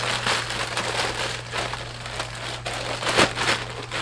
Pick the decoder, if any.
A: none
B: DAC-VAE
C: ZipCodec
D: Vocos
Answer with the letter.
A